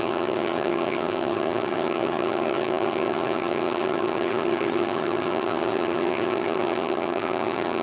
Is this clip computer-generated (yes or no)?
yes